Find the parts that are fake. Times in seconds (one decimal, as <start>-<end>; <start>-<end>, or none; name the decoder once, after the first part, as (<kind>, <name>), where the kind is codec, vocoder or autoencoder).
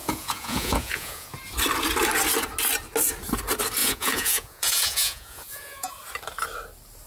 0.0-1.3 (vocoder, Vocos); 3.8-5.9